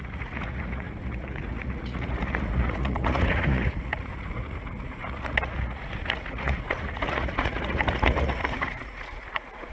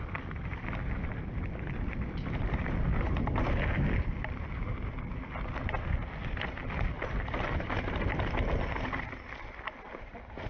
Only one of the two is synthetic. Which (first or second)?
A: first